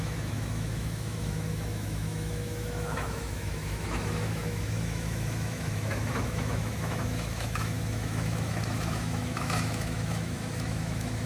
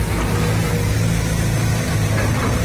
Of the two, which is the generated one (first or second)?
first